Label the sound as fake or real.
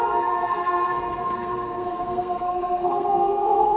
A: fake